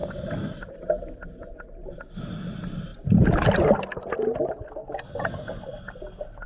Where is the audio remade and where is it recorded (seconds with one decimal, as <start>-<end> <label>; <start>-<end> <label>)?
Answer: 0.0-6.5 recorded